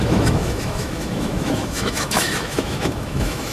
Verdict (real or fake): fake